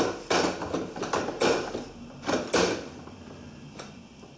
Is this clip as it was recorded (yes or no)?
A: yes